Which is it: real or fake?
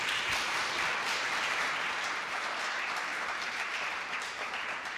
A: fake